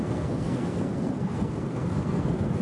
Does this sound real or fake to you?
fake